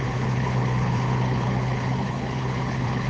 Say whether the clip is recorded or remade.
remade